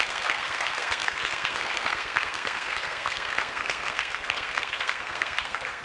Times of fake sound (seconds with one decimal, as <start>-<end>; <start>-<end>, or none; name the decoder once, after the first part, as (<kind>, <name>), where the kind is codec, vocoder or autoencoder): 0.0-5.8 (codec, SNAC)